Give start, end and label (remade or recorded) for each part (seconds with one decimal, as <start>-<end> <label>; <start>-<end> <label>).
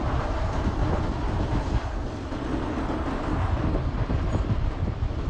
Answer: 0.0-0.8 remade; 0.8-3.9 recorded; 3.9-5.3 remade